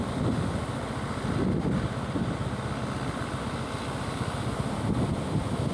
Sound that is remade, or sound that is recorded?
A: recorded